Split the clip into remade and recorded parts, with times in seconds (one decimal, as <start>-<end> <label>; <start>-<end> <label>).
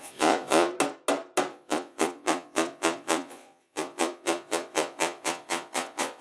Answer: 0.0-0.7 remade; 0.7-1.5 recorded; 1.5-6.2 remade